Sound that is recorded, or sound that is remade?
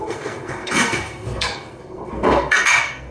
remade